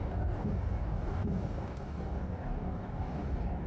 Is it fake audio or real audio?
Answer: fake